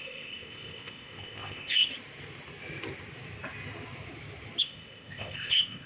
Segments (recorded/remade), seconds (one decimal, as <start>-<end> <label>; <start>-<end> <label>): 0.0-1.9 remade; 1.9-4.6 recorded; 4.6-5.9 remade